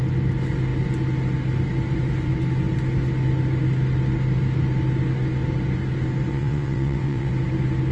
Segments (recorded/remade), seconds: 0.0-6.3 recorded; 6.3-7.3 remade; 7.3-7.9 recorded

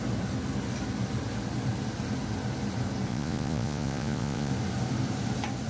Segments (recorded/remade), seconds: 0.0-3.1 recorded; 3.1-4.5 remade; 4.5-5.7 recorded

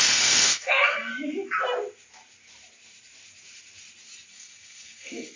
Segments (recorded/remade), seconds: 0.0-1.1 remade; 1.1-4.3 recorded; 4.3-5.4 remade

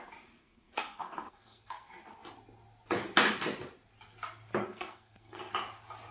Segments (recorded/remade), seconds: 0.0-0.4 recorded; 0.4-1.9 remade; 1.9-4.6 recorded; 4.6-5.5 remade; 5.5-6.1 recorded

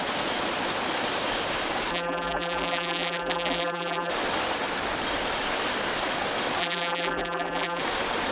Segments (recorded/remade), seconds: 0.0-1.9 recorded; 1.9-4.1 remade; 4.1-6.6 recorded; 6.6-7.8 remade; 7.8-8.3 recorded

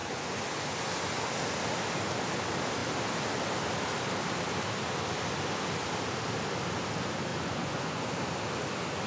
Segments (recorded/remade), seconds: 0.0-1.2 remade; 1.2-7.3 recorded; 7.3-8.1 remade; 8.1-9.1 recorded

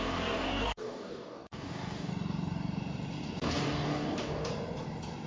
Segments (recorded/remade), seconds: 0.0-2.1 remade; 2.1-3.4 recorded; 3.4-4.5 remade; 4.5-5.3 recorded

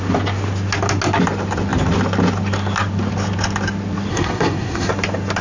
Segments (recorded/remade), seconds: 0.0-4.1 recorded; 4.1-4.9 remade; 4.9-5.4 recorded